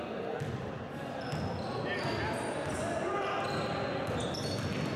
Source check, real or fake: real